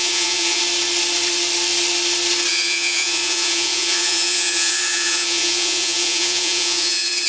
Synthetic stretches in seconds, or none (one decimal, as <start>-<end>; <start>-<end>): 0.0-0.6; 2.5-7.3